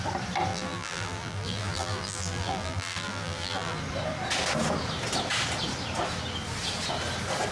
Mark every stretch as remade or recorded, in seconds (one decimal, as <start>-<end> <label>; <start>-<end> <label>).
0.0-0.5 recorded; 0.5-3.8 remade; 3.8-7.5 recorded